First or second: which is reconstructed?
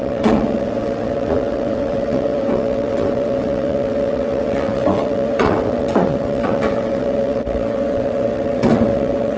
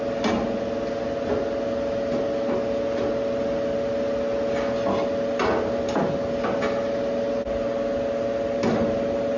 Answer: first